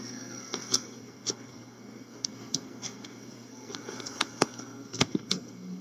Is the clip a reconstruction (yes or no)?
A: yes